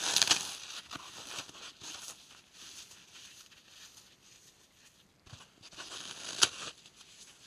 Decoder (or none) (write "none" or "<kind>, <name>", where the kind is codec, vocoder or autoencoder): none